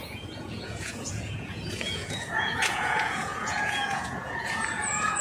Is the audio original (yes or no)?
no